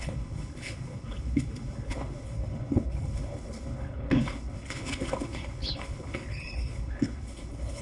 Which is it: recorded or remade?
remade